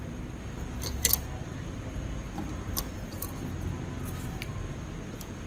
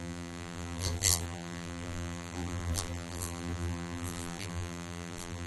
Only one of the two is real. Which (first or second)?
first